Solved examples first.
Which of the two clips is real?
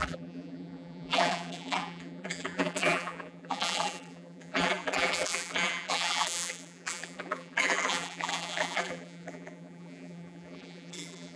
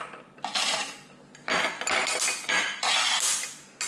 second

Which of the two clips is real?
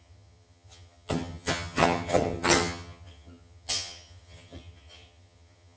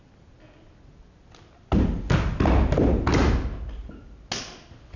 second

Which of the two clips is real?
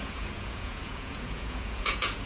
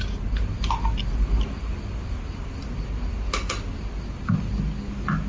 second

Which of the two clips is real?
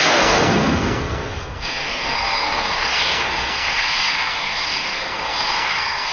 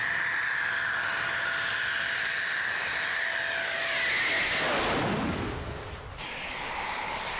second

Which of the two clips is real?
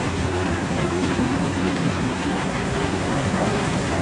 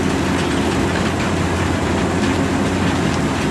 second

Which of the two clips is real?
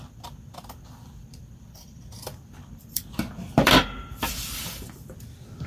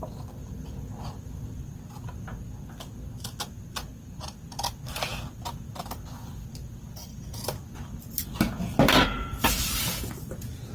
second